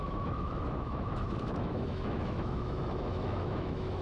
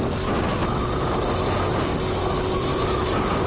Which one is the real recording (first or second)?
second